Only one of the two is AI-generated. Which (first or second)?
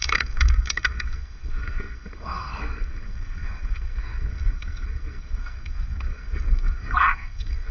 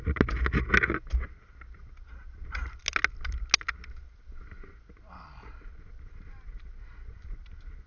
first